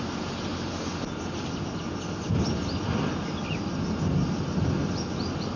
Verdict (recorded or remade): recorded